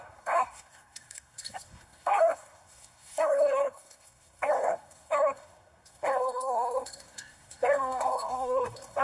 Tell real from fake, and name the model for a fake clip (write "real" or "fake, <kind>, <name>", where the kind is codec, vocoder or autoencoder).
fake, codec, SNAC